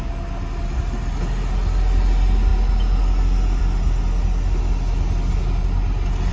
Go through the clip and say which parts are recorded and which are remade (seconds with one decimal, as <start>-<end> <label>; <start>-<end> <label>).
0.0-6.3 recorded